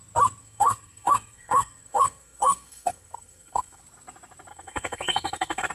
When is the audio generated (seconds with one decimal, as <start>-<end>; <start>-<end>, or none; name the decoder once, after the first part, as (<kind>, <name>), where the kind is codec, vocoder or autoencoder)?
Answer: 0.4-3.8 (codec, SNAC); 4.5-5.7